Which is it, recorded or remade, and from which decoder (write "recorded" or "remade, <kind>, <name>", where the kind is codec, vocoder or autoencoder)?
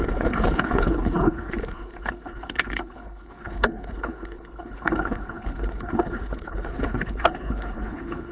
remade, codec, HILCodec